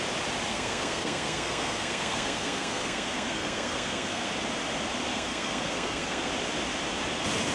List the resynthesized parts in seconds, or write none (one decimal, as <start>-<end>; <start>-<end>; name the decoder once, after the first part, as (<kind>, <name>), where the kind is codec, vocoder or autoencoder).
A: 0.5-4.3 (codec, SNAC); 5.1-6.3

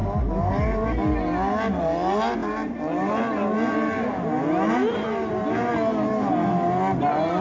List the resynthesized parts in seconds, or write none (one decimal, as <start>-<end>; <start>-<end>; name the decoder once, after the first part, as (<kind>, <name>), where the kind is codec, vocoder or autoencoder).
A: none